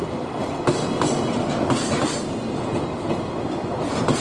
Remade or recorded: recorded